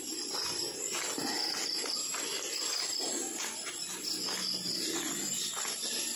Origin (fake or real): real